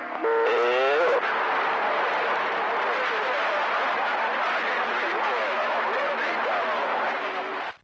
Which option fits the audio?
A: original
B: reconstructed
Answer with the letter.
A